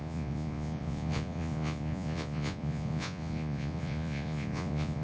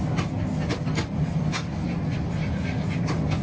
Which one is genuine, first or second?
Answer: second